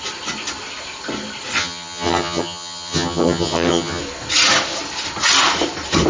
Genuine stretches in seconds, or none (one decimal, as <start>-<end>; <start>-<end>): 0.0-1.6; 4.0-6.1